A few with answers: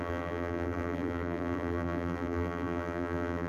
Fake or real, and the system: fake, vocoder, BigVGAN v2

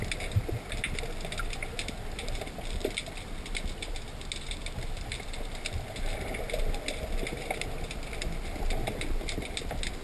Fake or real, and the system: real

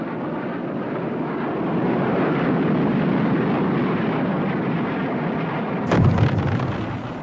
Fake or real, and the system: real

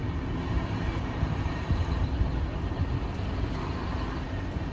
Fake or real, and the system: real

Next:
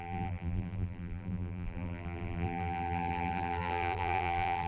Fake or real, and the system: fake, vocoder, BigVGAN v2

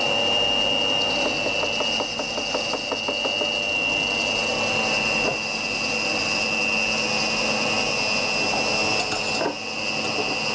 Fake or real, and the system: real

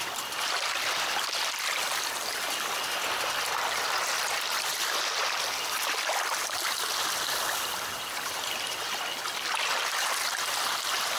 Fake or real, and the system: real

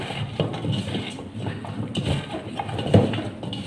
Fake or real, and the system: real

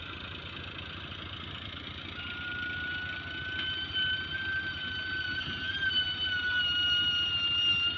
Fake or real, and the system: real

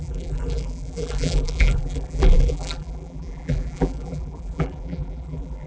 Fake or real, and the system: fake, vocoder, BigVGAN v2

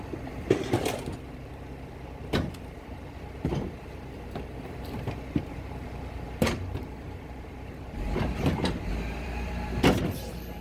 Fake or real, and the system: fake, vocoder, BigVGAN v2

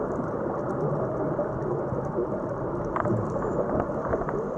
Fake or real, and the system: real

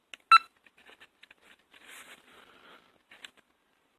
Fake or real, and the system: real